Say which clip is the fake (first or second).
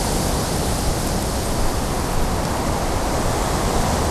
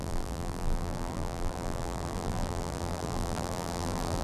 second